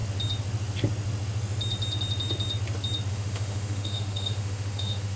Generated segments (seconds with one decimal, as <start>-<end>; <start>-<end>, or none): 3.1-5.2